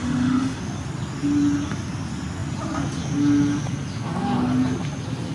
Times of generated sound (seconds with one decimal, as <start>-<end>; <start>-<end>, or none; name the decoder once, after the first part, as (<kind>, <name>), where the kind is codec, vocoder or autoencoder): 0.0-0.6 (autoencoder, DAC-VAE)